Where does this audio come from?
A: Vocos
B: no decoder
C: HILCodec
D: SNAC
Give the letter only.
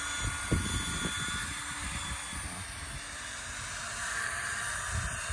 B